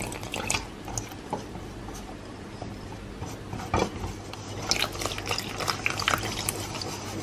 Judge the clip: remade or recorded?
recorded